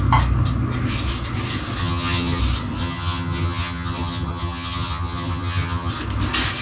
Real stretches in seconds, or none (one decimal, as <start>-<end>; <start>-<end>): 0.0-1.8; 2.4-2.8; 5.9-6.6